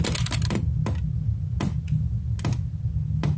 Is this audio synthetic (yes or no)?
no